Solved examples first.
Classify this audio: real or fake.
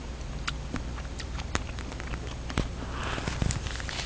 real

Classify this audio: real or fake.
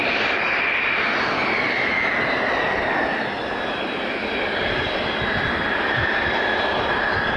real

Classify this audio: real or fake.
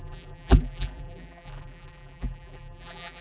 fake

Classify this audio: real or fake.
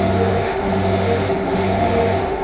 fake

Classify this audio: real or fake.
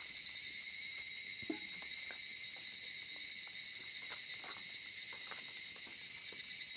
real